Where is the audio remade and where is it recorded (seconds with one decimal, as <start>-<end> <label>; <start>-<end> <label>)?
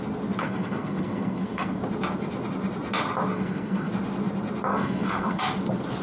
0.0-0.4 recorded; 0.4-1.8 remade; 1.8-3.3 recorded; 3.3-3.9 remade; 3.9-4.7 recorded; 4.7-5.4 remade; 5.4-6.0 recorded